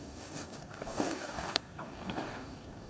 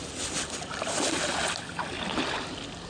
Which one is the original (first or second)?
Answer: second